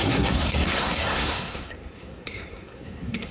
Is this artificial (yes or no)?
yes